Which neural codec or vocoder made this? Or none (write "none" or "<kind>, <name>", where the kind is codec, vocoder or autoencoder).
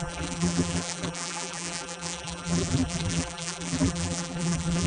vocoder, BigVGAN v2